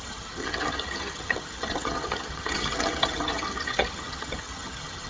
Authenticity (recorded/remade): remade